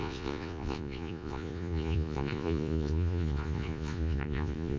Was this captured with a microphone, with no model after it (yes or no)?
no